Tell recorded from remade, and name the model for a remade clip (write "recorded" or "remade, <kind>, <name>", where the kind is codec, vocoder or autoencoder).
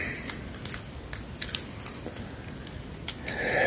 recorded